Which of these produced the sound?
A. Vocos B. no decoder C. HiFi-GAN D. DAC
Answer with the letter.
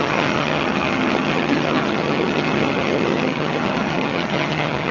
C